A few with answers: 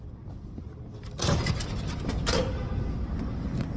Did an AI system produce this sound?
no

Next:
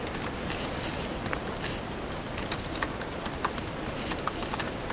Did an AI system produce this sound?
no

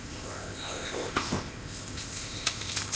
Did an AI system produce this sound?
yes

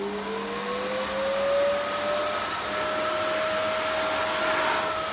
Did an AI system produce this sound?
no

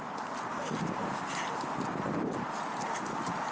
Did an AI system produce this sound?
no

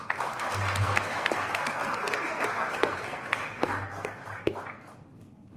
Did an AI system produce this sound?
yes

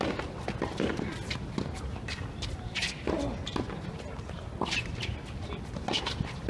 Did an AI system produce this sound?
no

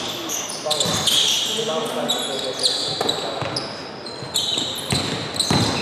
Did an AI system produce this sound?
no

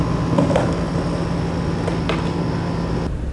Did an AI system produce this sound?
no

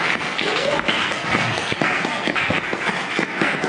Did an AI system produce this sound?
yes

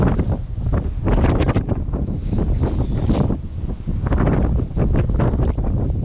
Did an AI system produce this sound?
no